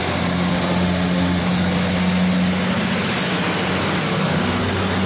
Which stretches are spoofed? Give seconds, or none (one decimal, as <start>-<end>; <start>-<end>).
0.5-1.4; 4.0-4.6